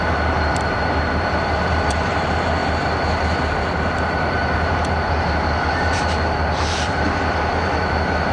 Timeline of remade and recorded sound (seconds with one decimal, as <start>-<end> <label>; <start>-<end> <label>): 0.0-2.6 remade; 2.6-3.5 recorded; 3.5-8.3 remade